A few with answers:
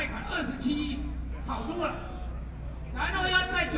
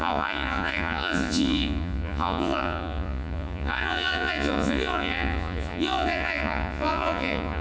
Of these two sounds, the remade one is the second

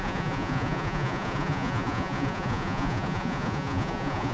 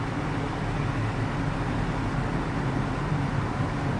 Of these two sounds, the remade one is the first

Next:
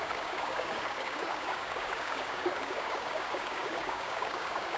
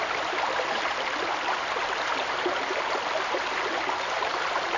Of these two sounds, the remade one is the first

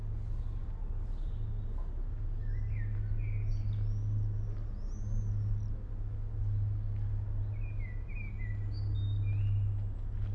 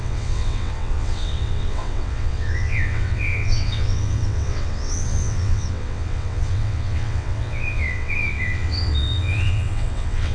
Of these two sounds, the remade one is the second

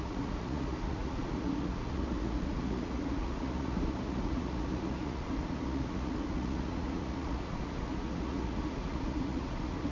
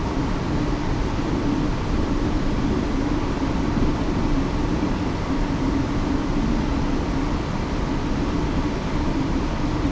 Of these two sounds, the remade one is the first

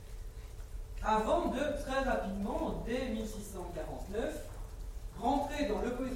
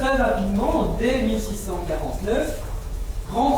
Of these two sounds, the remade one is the second